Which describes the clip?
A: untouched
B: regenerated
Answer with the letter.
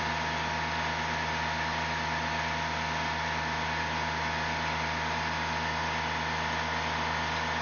A